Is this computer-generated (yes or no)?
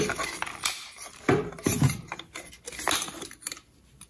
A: no